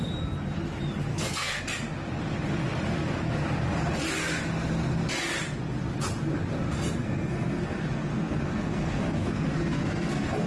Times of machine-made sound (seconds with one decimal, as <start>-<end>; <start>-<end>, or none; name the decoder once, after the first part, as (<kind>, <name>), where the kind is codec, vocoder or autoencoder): 1.1-1.6 (codec, SNAC); 7.0-10.5